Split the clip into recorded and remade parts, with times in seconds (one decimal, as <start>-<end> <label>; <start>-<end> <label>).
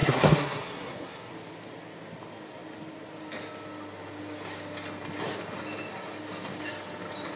0.0-1.3 remade; 1.3-7.4 recorded